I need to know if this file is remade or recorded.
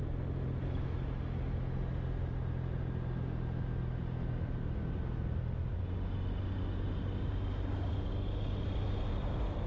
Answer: recorded